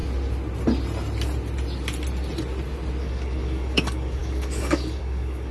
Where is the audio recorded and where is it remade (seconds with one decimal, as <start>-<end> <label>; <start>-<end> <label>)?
0.0-3.0 recorded; 3.0-5.5 remade